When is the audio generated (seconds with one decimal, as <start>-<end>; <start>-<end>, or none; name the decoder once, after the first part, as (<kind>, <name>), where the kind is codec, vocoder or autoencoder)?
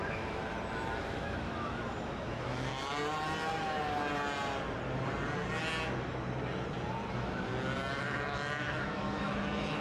0.0-0.4 (autoencoder, DAC-VAE); 1.0-2.7; 7.1-7.5; 8.0-9.8